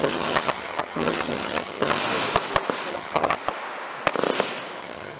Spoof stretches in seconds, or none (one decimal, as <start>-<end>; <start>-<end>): 0.0-2.0; 2.9-3.4; 4.8-5.2